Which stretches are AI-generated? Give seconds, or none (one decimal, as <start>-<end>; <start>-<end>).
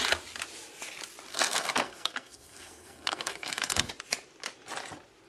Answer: 1.3-3.9